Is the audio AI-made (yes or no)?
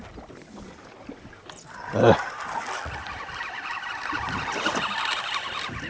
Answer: no